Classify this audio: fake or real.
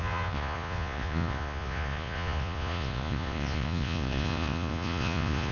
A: fake